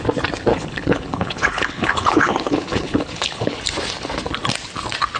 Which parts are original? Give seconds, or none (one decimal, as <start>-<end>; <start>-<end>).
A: 0.0-0.5; 3.6-5.2